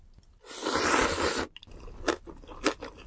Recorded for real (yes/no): yes